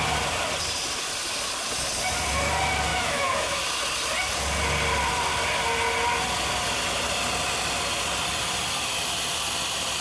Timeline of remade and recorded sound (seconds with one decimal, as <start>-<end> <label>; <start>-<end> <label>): 0.0-2.9 recorded; 2.9-3.6 remade; 3.6-10.0 recorded